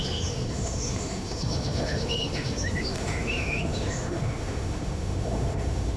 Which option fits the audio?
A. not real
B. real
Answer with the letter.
A